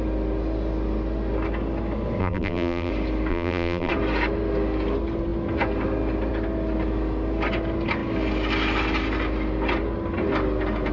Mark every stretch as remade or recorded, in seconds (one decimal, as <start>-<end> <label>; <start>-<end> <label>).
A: 0.0-2.2 recorded; 2.2-2.9 remade; 2.9-3.3 recorded; 3.3-3.9 remade; 3.9-10.9 recorded